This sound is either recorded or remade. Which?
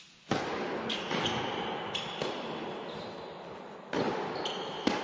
recorded